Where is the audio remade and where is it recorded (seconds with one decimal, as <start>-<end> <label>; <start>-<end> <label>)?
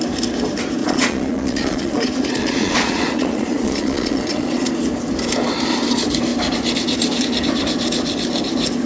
0.0-0.8 recorded; 0.8-4.7 remade; 4.7-8.9 recorded